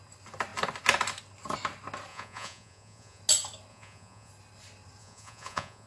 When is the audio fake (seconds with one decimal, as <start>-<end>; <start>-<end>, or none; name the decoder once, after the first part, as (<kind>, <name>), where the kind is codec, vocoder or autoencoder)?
2.1-3.2 (vocoder, Vocos); 3.7-4.3; 5.0-5.9